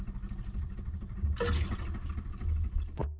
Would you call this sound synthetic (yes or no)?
no